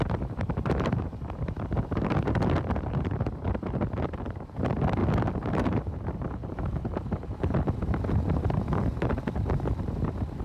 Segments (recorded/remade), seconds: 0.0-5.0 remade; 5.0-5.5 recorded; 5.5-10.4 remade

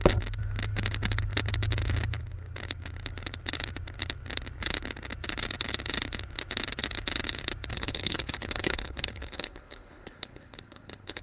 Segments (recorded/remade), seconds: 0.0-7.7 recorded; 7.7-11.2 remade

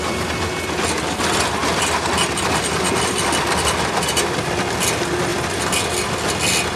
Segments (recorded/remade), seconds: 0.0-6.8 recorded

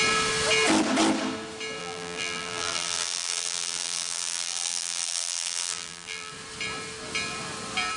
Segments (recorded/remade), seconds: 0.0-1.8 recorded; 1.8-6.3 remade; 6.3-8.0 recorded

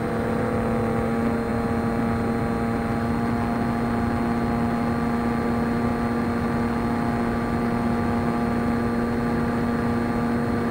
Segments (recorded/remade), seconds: 0.0-10.7 recorded

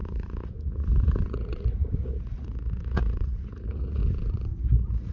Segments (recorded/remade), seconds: 0.0-4.0 remade; 4.0-4.6 recorded; 4.6-5.1 remade